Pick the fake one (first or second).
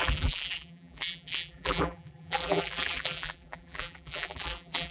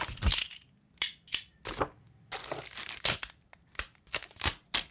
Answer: first